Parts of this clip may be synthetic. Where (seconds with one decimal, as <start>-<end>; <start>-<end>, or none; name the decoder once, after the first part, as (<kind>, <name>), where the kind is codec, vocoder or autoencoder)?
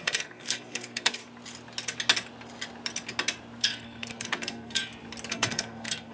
0.0-1.2 (codec, SNAC); 3.6-4.8; 5.3-6.1